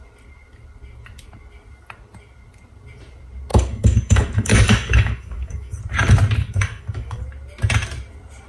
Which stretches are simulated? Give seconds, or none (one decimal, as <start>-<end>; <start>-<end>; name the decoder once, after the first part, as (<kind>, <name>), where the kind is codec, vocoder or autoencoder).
3.5-5.8 (codec, DAC); 6.4-7.2